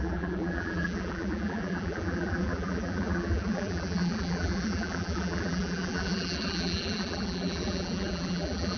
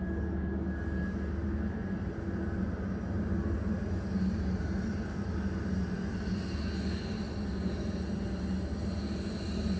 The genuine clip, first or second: second